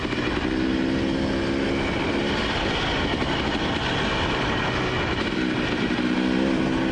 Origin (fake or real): real